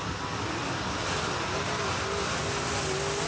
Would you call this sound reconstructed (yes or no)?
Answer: no